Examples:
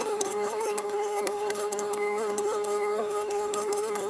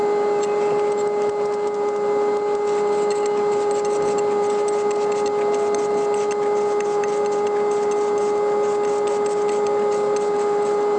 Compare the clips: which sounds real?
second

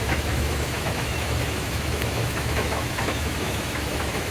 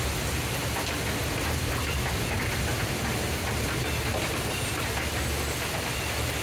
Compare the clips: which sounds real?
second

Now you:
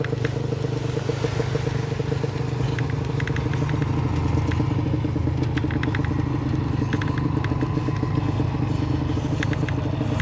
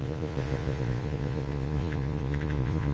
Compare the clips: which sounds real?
first